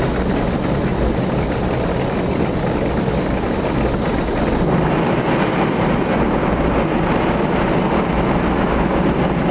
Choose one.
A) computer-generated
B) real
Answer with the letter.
B